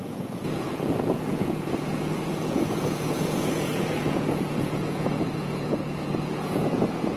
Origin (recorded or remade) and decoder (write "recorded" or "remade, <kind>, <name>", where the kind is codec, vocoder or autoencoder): remade, vocoder, Vocos